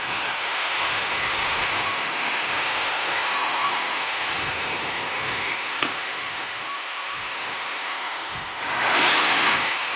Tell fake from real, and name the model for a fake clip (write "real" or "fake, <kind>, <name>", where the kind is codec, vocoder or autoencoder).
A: fake, autoencoder, DAC-VAE